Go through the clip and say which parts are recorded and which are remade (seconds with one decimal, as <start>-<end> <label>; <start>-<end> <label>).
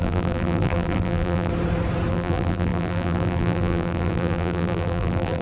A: 0.0-1.5 remade; 1.5-2.1 recorded; 2.1-5.4 remade